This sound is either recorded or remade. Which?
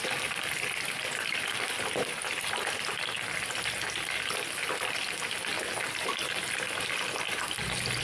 recorded